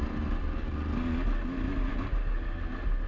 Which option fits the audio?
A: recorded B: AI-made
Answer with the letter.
A